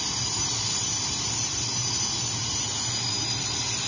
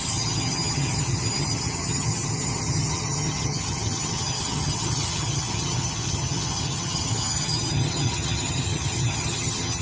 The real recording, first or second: first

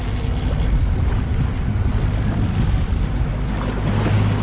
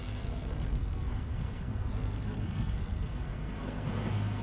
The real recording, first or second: first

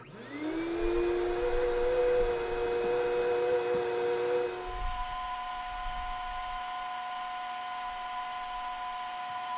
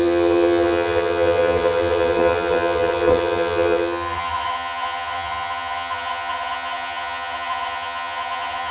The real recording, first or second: first